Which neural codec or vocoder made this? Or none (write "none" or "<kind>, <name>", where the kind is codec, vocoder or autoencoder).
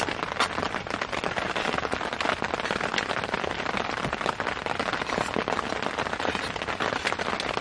none